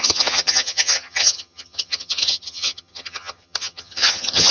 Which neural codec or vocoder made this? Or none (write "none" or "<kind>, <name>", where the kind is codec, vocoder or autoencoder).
vocoder, HiFi-GAN